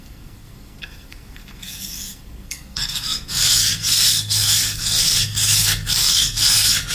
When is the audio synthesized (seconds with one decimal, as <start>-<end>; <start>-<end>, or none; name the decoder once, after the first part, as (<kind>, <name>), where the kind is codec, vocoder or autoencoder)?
0.0-6.9 (codec, SNAC)